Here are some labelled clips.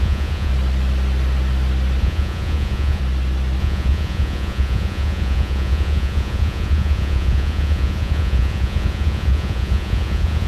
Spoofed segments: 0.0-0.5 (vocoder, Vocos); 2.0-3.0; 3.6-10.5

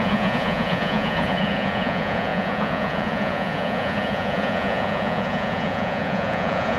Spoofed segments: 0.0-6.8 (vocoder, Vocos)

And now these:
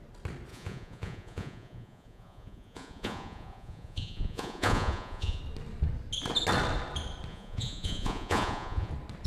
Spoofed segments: 0.5-5.4 (vocoder, Vocos); 7.3-8.9

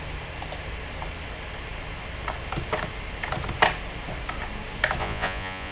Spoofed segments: 5.0-5.7 (vocoder, Vocos)

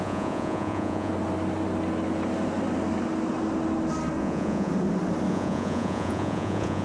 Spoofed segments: 0.0-1.1 (vocoder, Vocos); 4.2-4.7; 5.3-6.8